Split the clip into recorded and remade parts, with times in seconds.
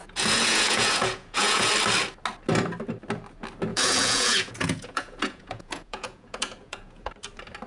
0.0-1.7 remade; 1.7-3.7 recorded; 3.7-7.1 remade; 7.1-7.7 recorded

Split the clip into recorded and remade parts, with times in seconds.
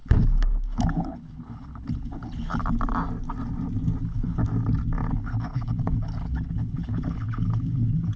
0.0-2.6 remade; 2.6-4.0 recorded; 4.0-4.4 remade; 4.4-5.1 recorded; 5.1-8.2 remade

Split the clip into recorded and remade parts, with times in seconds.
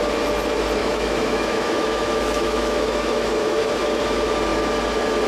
0.0-0.8 recorded; 0.8-4.0 remade; 4.0-5.3 recorded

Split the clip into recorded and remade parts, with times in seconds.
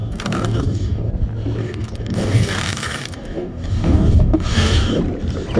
0.0-1.1 remade; 1.1-1.6 recorded; 1.6-5.0 remade; 5.0-5.6 recorded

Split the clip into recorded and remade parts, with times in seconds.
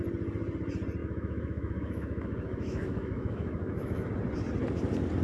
0.0-1.0 recorded; 1.0-4.1 remade; 4.1-5.2 recorded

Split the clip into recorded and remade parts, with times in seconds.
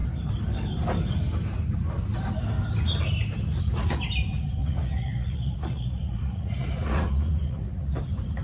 0.0-4.6 recorded; 4.6-8.0 remade; 8.0-8.4 recorded